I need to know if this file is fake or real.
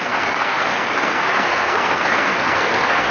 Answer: fake